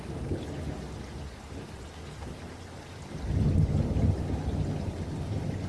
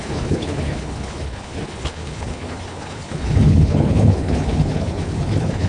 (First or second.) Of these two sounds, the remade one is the second